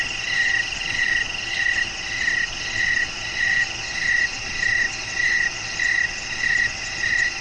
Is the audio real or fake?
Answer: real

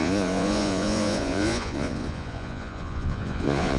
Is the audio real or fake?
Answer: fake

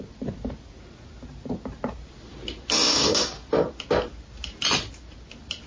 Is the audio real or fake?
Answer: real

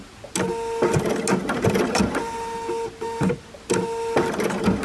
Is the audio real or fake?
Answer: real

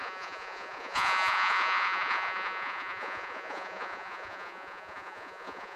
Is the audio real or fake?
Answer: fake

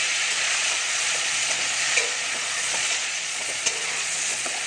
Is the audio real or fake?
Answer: fake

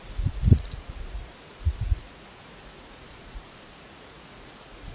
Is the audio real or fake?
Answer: fake